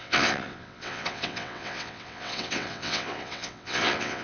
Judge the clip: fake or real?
fake